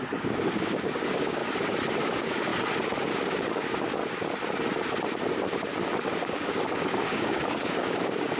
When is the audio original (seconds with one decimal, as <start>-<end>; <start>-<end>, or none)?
1.4-2.0; 2.5-3.4; 4.0-6.1